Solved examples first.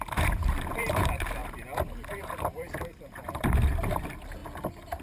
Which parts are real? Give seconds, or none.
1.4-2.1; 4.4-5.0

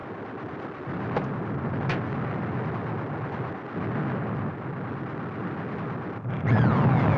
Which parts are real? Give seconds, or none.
1.9-7.2

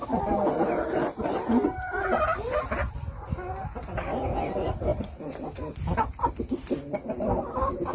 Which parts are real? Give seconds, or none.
0.0-7.9

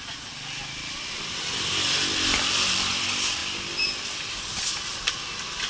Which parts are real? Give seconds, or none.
3.4-4.6

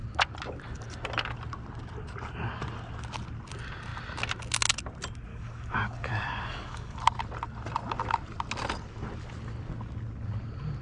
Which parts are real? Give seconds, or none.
0.0-5.3; 7.0-10.8

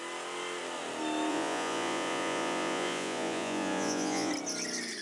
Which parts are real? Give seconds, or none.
0.0-1.3; 4.3-5.0